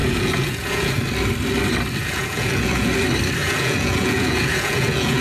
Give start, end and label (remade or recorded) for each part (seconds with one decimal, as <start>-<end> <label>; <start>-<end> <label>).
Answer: 0.0-1.0 remade; 1.0-2.0 recorded; 2.0-2.9 remade; 2.9-3.4 recorded; 3.4-5.2 remade